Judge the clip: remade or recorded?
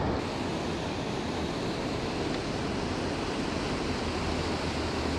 recorded